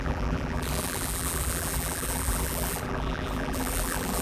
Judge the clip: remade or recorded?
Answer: remade